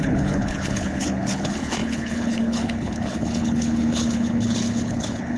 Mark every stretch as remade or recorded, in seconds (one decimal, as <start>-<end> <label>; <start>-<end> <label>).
0.0-5.4 remade